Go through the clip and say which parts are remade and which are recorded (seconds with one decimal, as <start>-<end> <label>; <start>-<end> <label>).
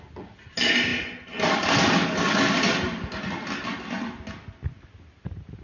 0.0-5.6 recorded